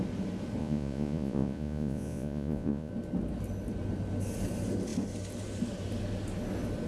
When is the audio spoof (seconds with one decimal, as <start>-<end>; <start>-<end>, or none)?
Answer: 0.6-2.9